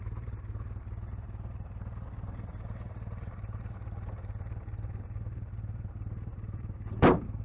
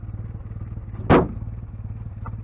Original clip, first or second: second